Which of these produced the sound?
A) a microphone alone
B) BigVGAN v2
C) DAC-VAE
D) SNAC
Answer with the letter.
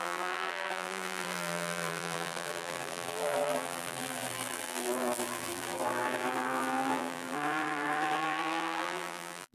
B